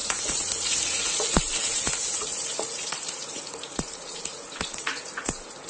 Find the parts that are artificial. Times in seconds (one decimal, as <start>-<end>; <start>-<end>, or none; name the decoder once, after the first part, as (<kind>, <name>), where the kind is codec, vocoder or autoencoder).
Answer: 0.0-5.7 (vocoder, Vocos)